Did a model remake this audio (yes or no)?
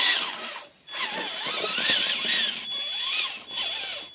no